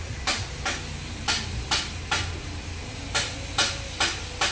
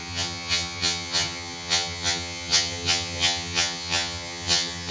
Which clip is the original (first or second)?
first